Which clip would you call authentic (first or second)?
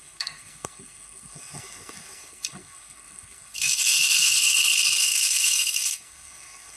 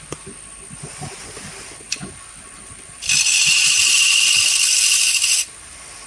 second